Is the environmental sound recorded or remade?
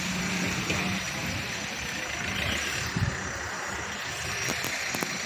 recorded